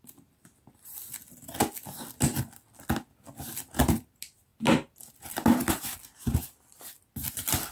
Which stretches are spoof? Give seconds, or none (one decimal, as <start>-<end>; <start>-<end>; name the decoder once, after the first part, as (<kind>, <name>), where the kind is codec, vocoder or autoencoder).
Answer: none